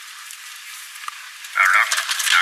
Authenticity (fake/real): real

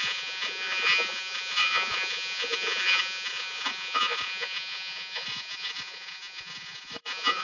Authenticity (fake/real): fake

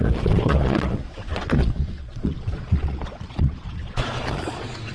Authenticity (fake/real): fake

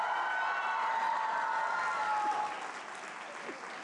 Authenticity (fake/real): real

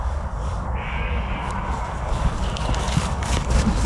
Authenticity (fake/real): fake